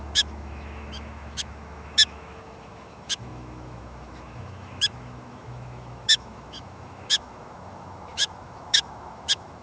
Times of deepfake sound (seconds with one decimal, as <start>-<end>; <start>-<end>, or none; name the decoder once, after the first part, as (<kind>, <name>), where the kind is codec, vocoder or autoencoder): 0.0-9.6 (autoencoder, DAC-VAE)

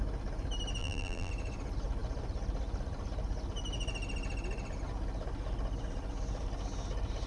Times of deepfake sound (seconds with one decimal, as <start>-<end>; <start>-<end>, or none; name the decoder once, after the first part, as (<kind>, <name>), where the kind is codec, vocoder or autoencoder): 0.8-1.3 (vocoder, BigVGAN v2)

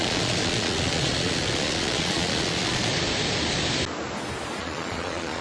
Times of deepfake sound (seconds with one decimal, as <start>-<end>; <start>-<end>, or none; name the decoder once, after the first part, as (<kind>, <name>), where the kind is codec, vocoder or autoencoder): 0.0-2.9 (vocoder, Vocos); 4.6-5.4

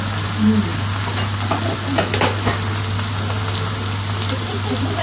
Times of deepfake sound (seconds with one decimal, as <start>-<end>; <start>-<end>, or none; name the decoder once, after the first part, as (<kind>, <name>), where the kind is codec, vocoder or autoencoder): none

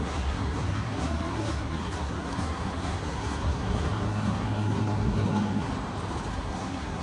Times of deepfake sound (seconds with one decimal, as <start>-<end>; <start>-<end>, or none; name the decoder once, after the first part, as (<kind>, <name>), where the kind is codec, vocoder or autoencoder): 0.0-5.7 (codec, SNAC); 6.3-7.0

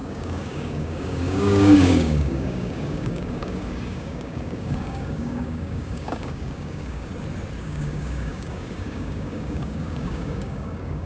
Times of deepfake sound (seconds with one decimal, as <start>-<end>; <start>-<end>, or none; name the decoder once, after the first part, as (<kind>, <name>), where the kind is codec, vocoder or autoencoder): 0.0-7.1 (codec, DAC); 7.6-11.1